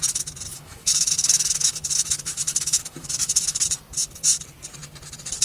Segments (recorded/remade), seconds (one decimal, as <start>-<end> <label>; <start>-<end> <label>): 0.0-0.5 recorded; 0.5-3.6 remade; 3.6-5.4 recorded